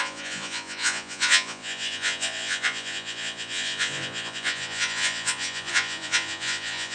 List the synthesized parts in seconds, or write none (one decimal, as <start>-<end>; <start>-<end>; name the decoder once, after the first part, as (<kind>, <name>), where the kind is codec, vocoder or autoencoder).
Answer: 0.0-6.9 (vocoder, Vocos)